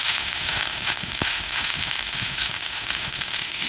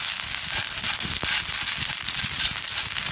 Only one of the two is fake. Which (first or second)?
first